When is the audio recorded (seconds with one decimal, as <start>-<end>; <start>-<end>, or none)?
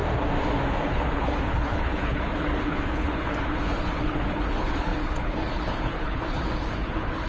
0.0-0.8